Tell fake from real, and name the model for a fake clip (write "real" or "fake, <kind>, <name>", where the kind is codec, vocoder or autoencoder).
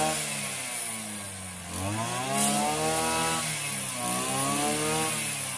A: real